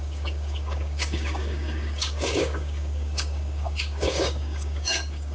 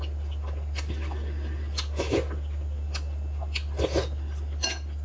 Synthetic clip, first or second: first